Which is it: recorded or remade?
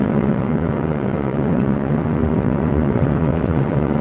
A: remade